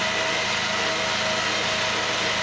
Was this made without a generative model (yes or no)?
yes